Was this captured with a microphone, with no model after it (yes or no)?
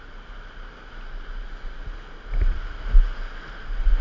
yes